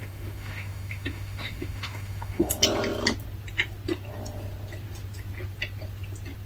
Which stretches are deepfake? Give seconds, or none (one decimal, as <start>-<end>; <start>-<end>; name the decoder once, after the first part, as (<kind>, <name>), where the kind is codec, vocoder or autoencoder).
0.0-2.5 (autoencoder, DAC-VAE)